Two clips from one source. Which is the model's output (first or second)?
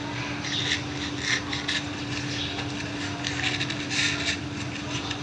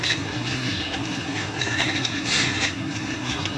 second